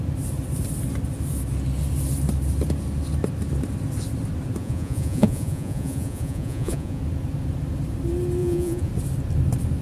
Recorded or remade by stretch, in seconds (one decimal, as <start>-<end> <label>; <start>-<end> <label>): 0.0-4.6 recorded; 4.6-7.0 remade; 7.0-8.4 recorded; 8.4-8.9 remade; 8.9-9.8 recorded